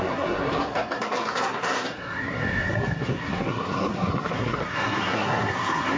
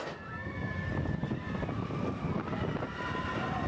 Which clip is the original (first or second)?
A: second